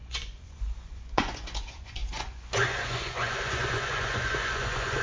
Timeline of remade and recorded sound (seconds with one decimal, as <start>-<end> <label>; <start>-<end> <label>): 0.0-5.0 remade